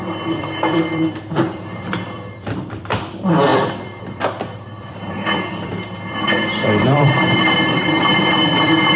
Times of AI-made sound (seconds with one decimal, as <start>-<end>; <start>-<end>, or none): 0.0-9.0